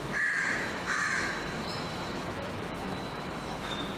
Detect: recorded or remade remade